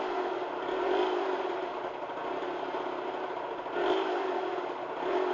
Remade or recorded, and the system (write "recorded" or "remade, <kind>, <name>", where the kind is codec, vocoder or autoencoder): recorded